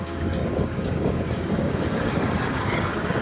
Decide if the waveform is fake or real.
fake